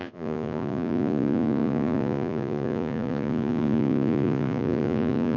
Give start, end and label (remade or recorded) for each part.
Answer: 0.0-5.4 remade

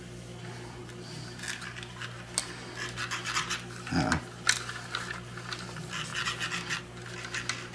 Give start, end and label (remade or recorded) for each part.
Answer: 0.0-7.7 recorded

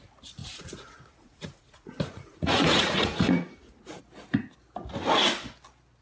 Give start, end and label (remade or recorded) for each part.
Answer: 0.0-0.4 recorded; 0.4-4.0 remade; 4.0-6.0 recorded

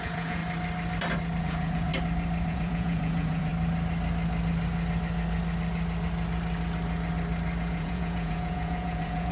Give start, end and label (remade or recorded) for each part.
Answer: 0.0-0.4 remade; 0.4-1.4 recorded; 1.4-1.9 remade; 1.9-2.5 recorded; 2.5-3.5 remade; 3.5-7.6 recorded; 7.6-9.3 remade

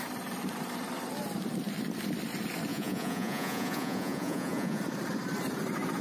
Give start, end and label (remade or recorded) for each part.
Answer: 0.0-2.7 recorded; 2.7-4.8 remade; 4.8-6.0 recorded

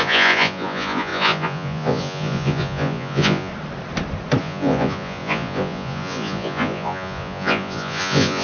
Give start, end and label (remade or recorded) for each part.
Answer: 0.0-3.5 remade; 3.5-4.4 recorded; 4.4-8.4 remade